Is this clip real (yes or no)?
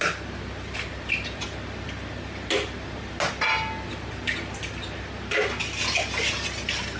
yes